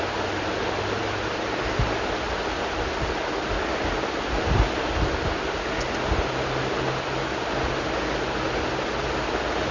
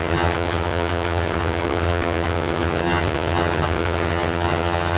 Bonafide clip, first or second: first